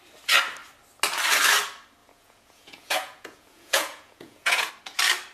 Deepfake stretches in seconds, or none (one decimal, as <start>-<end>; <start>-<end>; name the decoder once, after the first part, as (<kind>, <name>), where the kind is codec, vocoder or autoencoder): 2.0-4.7 (vocoder, Vocos)